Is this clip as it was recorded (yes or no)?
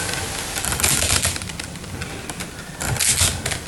yes